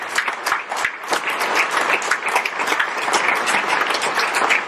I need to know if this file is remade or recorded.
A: recorded